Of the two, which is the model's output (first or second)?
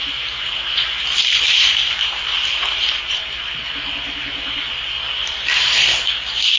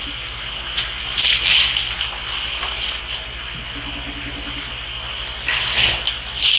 first